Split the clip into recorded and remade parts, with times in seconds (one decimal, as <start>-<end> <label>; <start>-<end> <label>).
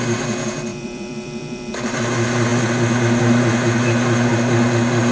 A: 0.0-0.7 recorded; 0.7-2.0 remade; 2.0-5.1 recorded